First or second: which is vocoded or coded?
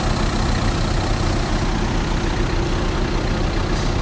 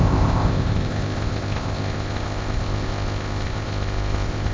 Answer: second